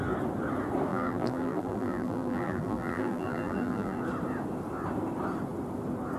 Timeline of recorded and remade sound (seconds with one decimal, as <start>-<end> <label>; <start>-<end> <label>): 0.0-0.9 recorded; 0.9-4.0 remade; 4.0-6.2 recorded